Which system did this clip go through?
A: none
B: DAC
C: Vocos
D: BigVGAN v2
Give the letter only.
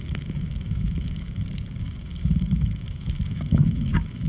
B